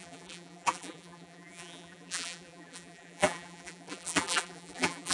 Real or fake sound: fake